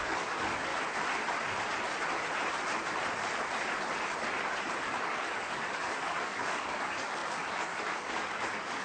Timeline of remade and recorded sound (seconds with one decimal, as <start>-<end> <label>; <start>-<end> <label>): 0.0-0.7 remade; 0.7-4.8 recorded; 4.8-8.8 remade